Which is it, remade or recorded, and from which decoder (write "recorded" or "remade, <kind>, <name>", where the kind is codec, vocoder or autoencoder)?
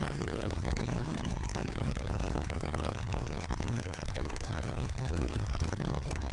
remade, codec, SNAC